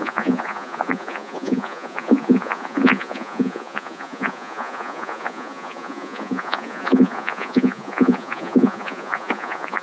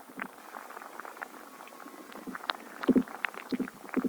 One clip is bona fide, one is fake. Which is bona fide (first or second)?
second